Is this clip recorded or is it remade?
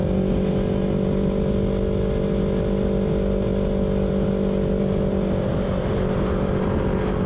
recorded